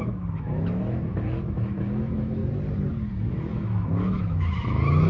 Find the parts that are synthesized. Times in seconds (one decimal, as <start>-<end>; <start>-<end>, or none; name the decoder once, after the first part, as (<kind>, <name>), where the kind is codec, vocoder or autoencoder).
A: 0.0-2.4 (autoencoder, DAC-VAE); 3.1-5.1